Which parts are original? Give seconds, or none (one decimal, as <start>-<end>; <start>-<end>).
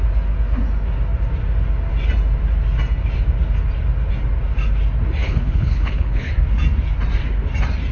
0.0-5.2; 6.3-7.9